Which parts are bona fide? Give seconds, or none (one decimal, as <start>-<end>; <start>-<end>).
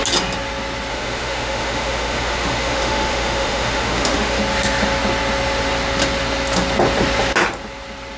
0.0-0.9; 4.4-8.2